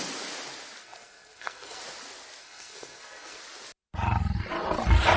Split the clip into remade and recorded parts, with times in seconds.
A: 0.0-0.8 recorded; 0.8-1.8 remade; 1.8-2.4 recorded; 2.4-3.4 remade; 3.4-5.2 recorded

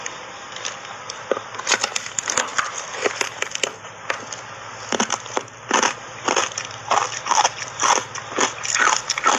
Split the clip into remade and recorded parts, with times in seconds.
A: 0.0-9.4 recorded

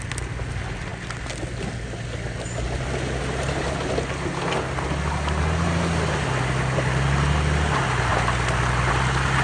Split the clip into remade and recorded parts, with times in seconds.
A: 0.0-9.4 recorded

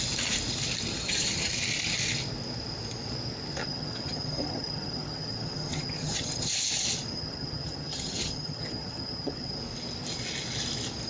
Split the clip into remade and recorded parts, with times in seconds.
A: 0.0-0.9 recorded; 0.9-1.5 remade; 1.5-3.6 recorded; 3.6-6.5 remade; 6.5-7.1 recorded; 7.1-9.6 remade; 9.6-11.1 recorded

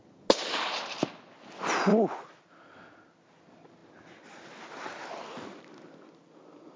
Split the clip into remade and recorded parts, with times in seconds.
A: 0.0-6.8 recorded

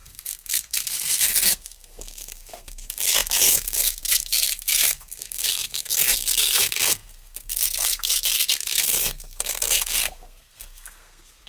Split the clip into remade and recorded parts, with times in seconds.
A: 0.0-11.5 remade

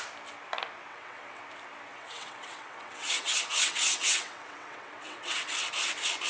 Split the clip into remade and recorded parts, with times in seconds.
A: 0.0-0.9 recorded; 0.9-1.4 remade; 1.4-1.9 recorded; 1.9-5.7 remade; 5.7-6.3 recorded

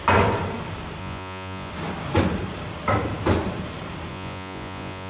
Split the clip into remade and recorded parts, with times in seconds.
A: 0.0-1.0 recorded; 1.0-1.7 remade; 1.7-4.1 recorded; 4.1-5.1 remade